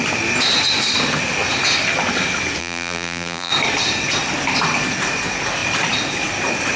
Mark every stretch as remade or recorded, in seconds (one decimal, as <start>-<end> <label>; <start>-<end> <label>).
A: 0.0-2.6 recorded; 2.6-3.5 remade; 3.5-6.8 recorded